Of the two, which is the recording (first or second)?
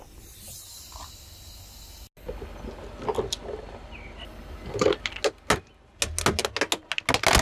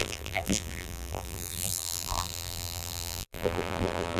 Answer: first